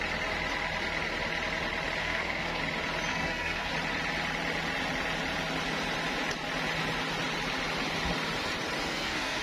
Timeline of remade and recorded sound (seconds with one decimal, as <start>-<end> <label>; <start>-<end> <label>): 0.0-2.0 recorded; 2.0-2.6 remade; 2.6-3.1 recorded; 3.1-3.7 remade; 3.7-8.9 recorded; 8.9-9.4 remade